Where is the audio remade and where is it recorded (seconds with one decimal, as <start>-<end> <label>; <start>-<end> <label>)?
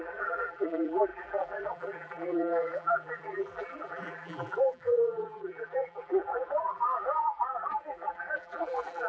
0.0-9.1 remade